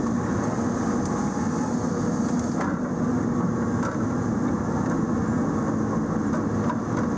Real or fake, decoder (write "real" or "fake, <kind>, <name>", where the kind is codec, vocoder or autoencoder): real